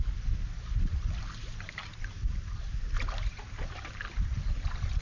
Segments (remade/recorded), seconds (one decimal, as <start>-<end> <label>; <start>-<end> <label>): 0.0-1.4 recorded; 1.4-3.9 remade; 3.9-5.0 recorded